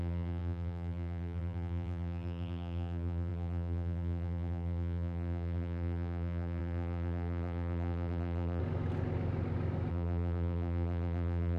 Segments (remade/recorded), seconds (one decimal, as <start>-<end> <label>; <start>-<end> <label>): 0.0-8.6 remade; 8.6-9.9 recorded; 9.9-11.6 remade